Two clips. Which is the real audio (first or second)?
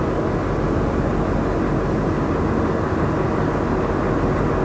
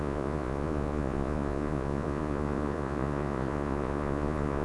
first